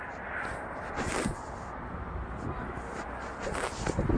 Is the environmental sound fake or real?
real